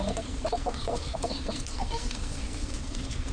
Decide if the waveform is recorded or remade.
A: remade